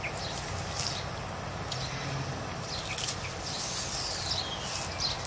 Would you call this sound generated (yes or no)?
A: no